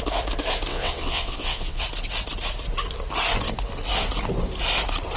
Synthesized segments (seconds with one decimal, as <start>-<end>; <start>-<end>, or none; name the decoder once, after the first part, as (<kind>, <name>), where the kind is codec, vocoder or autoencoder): 0.7-1.8 (vocoder, WaveNeXt)